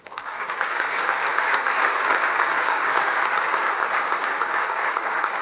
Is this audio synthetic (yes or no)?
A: yes